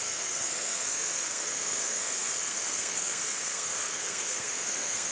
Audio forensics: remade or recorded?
remade